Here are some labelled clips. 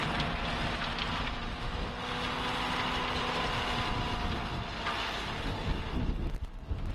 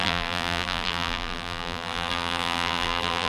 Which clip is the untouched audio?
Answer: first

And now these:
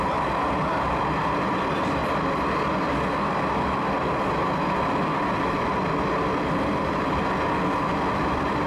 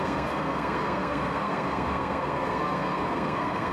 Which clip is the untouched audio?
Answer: first